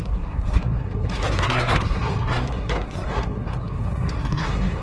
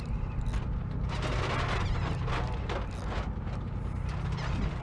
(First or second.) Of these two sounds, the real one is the second